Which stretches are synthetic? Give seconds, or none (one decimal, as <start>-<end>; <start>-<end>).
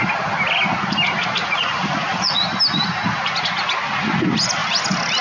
1.4-2.4